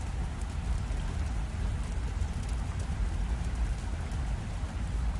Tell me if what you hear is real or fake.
real